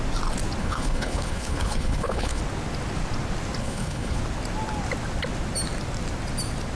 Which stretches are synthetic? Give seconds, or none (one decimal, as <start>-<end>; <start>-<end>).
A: 0.6-2.4; 3.6-4.2